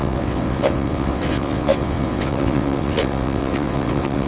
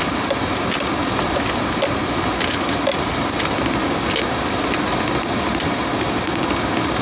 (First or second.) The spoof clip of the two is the first